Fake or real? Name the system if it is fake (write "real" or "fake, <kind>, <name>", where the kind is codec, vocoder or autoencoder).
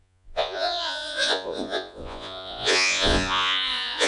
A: fake, vocoder, Vocos